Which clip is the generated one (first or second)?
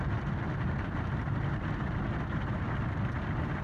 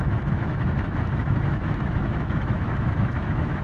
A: second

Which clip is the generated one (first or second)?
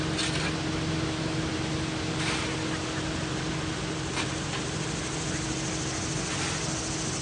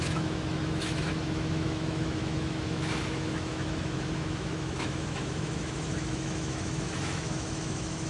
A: second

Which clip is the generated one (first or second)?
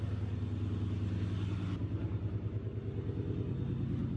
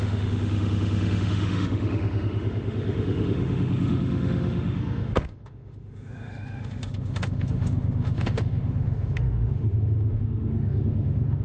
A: second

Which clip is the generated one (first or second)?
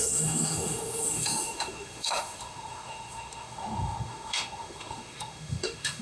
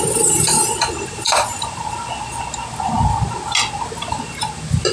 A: first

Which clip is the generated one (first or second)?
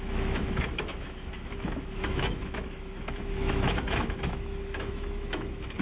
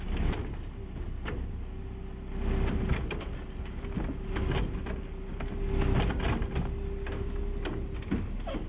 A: first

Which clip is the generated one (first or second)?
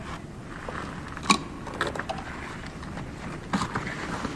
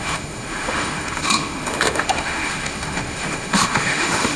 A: second